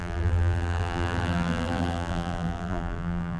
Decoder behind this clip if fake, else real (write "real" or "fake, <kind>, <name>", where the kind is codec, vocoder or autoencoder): fake, vocoder, BigVGAN v2